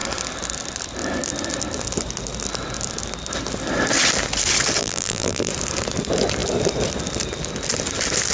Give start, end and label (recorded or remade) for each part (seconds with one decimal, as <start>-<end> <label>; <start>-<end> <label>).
0.0-4.8 recorded; 4.8-5.5 remade; 5.5-8.3 recorded